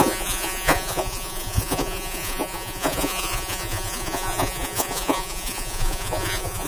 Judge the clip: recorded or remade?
remade